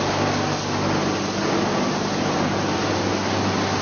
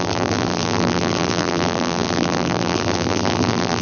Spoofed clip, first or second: second